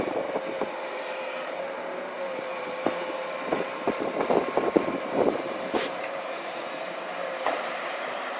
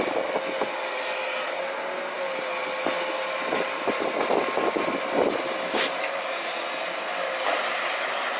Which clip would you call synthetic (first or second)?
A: first